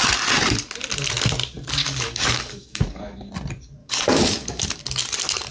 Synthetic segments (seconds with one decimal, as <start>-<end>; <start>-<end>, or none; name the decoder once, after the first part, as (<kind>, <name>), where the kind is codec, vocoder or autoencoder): 1.8-3.3 (codec, DAC); 3.8-4.8